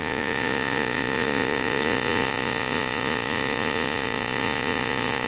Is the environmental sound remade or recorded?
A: remade